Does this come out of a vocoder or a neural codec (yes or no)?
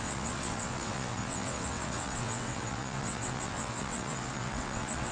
yes